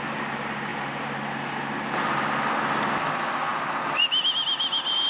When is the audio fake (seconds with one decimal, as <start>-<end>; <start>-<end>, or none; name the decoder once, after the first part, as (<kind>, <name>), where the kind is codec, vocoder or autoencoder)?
none